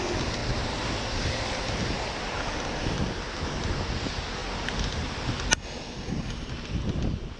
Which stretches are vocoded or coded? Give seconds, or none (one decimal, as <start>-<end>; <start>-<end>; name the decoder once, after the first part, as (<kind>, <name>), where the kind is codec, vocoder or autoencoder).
none